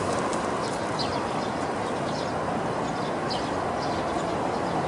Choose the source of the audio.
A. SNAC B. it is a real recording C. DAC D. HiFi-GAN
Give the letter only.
B